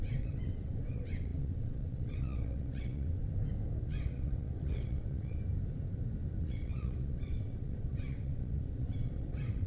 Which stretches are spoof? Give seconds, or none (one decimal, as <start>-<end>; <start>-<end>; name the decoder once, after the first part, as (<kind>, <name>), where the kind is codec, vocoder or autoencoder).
0.0-3.2 (vocoder, WaveNeXt); 3.8-5.4; 6.4-9.7